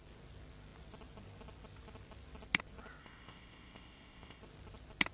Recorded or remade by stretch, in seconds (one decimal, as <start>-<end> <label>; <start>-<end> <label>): 0.0-3.0 recorded; 3.0-4.4 remade; 4.4-5.1 recorded